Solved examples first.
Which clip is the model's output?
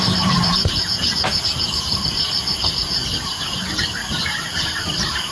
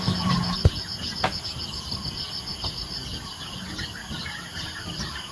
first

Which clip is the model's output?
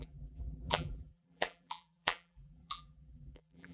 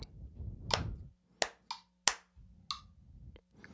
first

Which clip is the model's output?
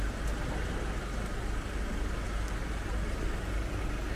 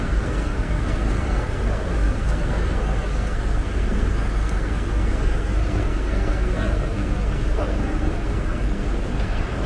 second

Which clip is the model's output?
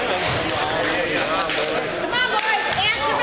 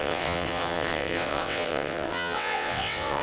second